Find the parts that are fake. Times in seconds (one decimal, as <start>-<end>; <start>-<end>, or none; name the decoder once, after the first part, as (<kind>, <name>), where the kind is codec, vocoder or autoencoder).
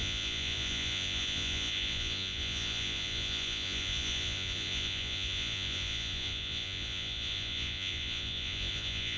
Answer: 0.0-9.2 (vocoder, Vocos)